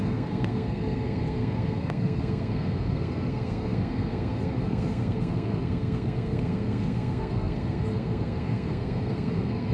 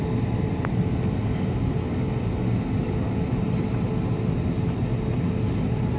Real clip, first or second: second